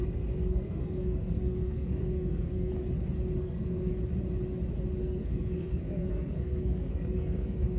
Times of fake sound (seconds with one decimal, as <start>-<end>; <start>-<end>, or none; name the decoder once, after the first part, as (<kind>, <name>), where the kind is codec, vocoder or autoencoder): 0.0-2.7 (codec, SNAC); 3.4-3.9; 5.0-7.8

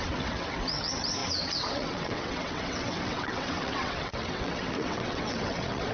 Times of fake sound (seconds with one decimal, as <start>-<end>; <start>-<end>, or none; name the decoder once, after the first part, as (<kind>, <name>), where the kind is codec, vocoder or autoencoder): 0.0-5.9 (vocoder, WaveNeXt)